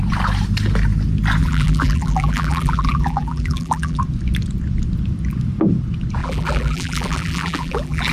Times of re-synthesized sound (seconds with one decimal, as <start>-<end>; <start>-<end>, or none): 1.4-4.0; 6.2-8.1